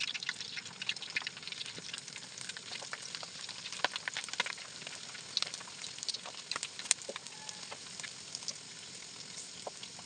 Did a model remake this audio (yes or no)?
no